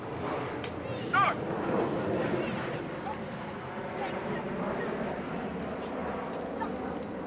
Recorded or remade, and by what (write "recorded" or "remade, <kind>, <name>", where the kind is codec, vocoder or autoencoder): recorded